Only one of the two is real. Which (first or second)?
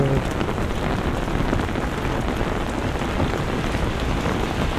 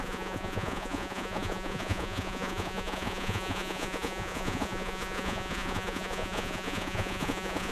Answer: first